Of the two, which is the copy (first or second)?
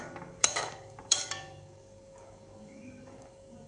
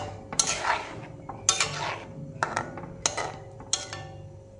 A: first